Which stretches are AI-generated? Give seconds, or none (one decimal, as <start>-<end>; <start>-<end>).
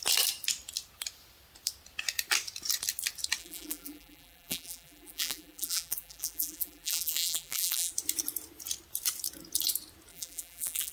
3.4-7.9; 10.1-10.9